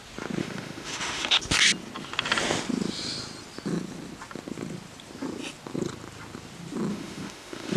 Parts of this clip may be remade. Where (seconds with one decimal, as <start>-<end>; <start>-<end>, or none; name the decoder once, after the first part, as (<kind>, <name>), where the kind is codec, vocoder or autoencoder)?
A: 0.4-1.4 (autoencoder, DAC-VAE); 6.9-7.8